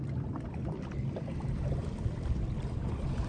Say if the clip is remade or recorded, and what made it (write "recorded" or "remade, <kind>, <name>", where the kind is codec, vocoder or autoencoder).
remade, vocoder, BigVGAN v2